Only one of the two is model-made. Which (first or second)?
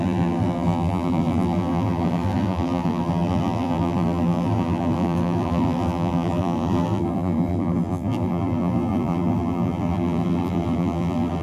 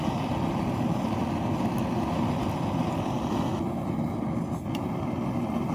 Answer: first